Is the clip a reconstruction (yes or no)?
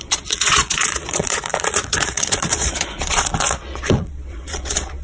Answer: yes